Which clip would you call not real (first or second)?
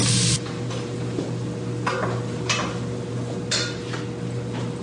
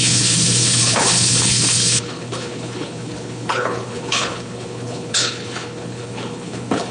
second